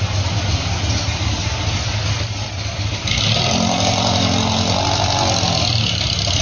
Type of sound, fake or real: real